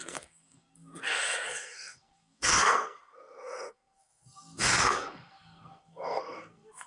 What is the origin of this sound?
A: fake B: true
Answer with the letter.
A